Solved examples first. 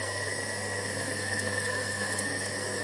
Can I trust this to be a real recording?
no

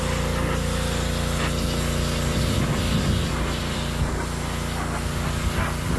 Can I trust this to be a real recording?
yes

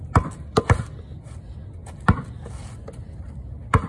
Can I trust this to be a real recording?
yes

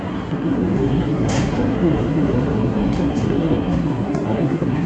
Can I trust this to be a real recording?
no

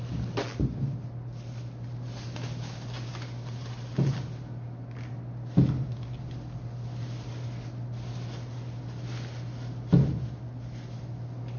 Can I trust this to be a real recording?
yes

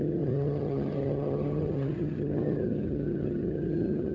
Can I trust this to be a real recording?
no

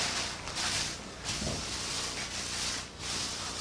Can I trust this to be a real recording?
yes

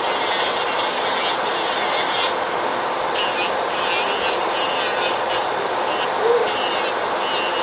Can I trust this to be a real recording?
yes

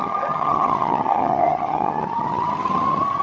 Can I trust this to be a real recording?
no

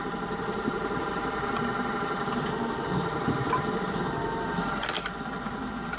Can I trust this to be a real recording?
yes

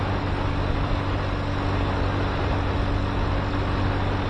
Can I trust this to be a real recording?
yes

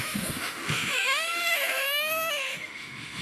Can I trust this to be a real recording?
no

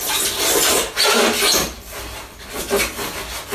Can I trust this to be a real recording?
yes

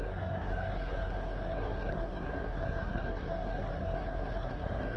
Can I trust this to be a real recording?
no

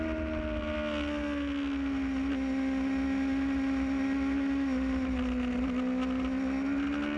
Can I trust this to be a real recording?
yes